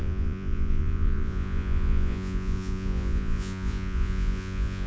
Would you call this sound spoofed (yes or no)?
yes